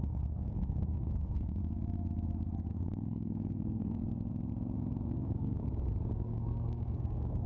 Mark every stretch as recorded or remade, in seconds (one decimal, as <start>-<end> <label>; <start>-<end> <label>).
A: 0.0-1.6 remade; 1.6-2.7 recorded; 2.7-4.0 remade; 4.0-5.1 recorded; 5.1-5.6 remade; 5.6-6.1 recorded; 6.1-7.5 remade